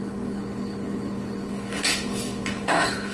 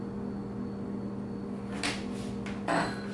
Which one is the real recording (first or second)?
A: second